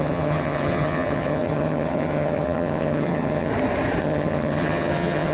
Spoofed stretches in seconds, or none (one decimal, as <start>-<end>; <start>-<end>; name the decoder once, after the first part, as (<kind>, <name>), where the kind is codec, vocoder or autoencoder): 0.0-3.5 (vocoder, HiFi-GAN); 4.0-5.3